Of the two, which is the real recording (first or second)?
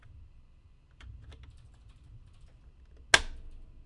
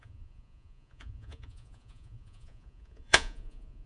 first